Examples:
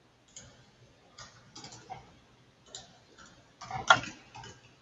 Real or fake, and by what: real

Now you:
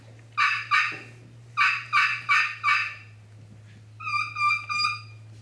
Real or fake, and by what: real